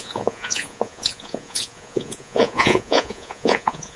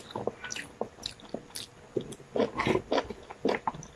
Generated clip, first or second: first